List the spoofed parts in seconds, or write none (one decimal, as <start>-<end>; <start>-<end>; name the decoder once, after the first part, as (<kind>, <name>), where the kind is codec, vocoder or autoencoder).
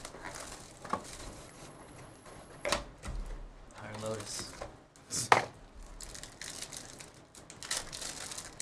1.2-2.7 (vocoder, Vocos)